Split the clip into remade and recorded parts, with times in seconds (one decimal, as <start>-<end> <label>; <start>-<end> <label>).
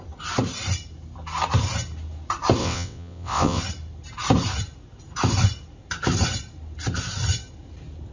0.0-2.6 recorded; 2.6-3.6 remade; 3.6-8.1 recorded